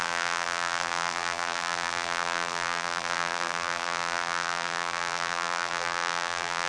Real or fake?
fake